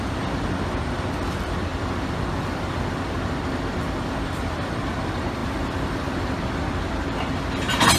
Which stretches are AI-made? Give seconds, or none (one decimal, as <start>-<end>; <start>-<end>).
0.0-1.7; 4.0-8.0